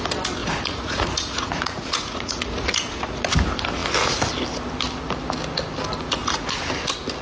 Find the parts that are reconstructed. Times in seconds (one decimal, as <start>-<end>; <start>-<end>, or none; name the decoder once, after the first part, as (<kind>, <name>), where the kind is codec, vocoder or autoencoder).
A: 0.4-3.3 (vocoder, Vocos); 6.2-6.7